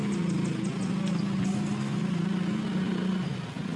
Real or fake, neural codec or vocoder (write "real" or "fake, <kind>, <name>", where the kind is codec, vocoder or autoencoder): real